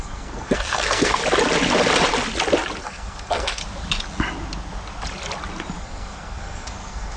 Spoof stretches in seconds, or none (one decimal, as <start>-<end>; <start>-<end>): 0.0-1.2; 2.8-3.6; 5.8-7.2